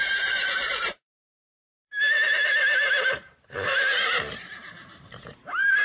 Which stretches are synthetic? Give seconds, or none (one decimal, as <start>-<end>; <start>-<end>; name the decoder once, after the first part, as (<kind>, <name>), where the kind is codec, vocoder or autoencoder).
0.0-5.8 (vocoder, BigVGAN v2)